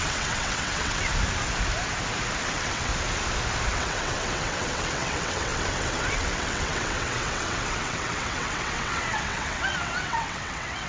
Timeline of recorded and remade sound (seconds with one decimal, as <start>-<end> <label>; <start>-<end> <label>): 0.0-1.1 remade; 1.1-2.4 recorded; 2.4-2.9 remade; 2.9-3.7 recorded; 3.7-10.9 remade